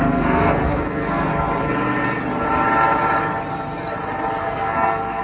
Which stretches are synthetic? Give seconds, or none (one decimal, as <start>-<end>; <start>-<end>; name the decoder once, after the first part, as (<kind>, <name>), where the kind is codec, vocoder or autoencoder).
0.0-1.3 (codec, SNAC); 4.4-5.2